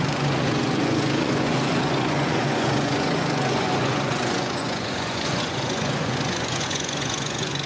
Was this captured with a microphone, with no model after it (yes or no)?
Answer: no